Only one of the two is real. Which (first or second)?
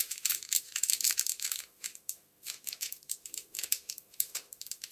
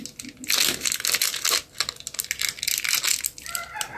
second